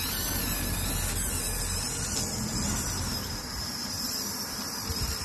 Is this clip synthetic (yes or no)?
no